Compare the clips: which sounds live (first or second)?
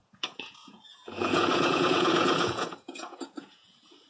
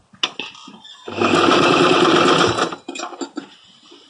second